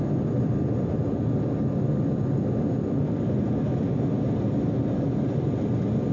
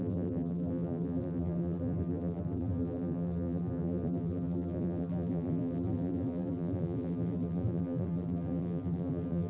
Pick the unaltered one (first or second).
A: first